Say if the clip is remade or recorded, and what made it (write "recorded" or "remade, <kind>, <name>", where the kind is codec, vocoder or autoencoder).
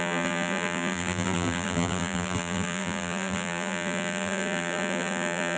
remade, vocoder, BigVGAN v2